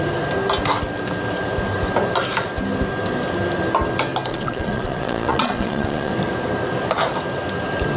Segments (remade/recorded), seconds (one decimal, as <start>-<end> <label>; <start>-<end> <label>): 0.0-4.3 recorded; 4.3-6.1 remade; 6.1-8.0 recorded

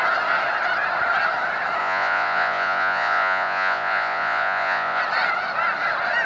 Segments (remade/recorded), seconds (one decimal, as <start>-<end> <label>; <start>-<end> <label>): 0.0-1.8 recorded; 1.8-5.0 remade; 5.0-6.2 recorded

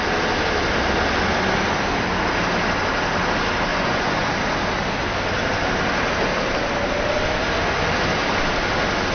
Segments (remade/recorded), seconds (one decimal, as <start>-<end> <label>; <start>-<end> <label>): 0.0-3.7 recorded; 3.7-4.3 remade; 4.3-9.1 recorded

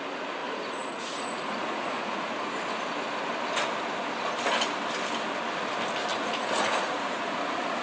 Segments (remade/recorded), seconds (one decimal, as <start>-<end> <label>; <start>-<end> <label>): 0.0-0.4 recorded; 0.4-2.8 remade; 2.8-6.1 recorded; 6.1-7.8 remade

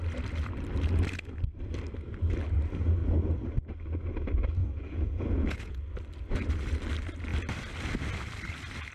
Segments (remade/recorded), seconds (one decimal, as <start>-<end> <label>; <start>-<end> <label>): 0.0-4.6 recorded; 4.6-5.8 remade; 5.8-8.9 recorded

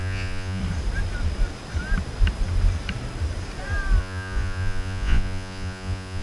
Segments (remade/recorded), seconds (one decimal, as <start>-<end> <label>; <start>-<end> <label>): 0.0-0.6 remade; 0.6-4.0 recorded; 4.0-6.2 remade